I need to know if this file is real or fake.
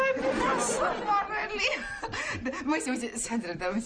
real